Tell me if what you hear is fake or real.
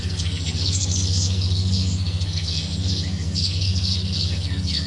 fake